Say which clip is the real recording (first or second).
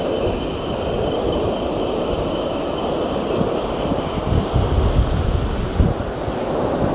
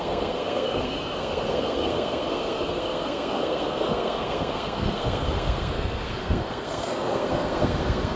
first